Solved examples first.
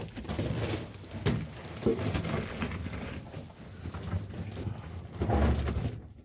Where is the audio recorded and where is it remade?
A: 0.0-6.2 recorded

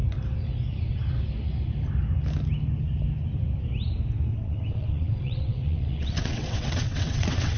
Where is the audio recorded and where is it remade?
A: 0.0-4.3 recorded; 4.3-7.6 remade

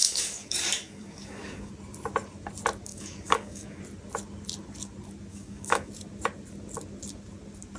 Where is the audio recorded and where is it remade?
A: 0.0-1.7 remade; 1.7-2.9 recorded; 2.9-3.8 remade; 3.8-5.3 recorded; 5.3-5.9 remade; 5.9-7.8 recorded